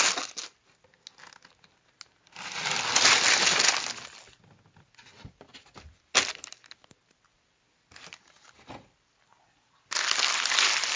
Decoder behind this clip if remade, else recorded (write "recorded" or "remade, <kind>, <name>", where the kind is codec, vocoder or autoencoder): recorded